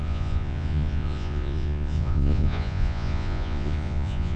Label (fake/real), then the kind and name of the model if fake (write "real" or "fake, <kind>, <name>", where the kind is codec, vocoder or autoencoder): fake, vocoder, Vocos